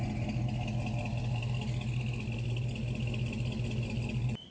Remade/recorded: recorded